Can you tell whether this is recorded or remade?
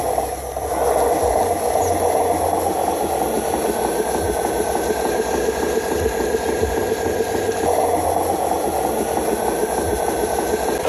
recorded